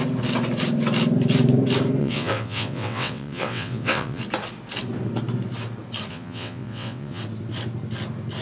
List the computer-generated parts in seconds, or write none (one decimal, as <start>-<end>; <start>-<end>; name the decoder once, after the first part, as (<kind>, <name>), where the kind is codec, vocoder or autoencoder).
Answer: 2.0-4.2 (vocoder, WaveNeXt); 6.1-7.2

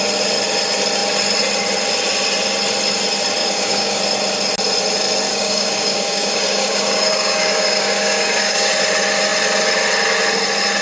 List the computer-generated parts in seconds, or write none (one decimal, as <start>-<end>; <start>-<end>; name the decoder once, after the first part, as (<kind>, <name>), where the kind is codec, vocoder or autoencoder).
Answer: 3.4-4.0 (codec, DAC); 5.3-8.7

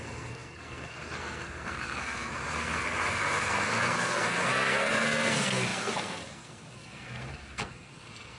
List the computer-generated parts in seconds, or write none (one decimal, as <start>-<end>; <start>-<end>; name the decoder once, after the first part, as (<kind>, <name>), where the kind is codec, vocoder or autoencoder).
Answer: 0.0-8.4 (codec, SNAC)